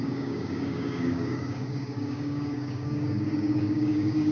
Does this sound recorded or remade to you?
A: remade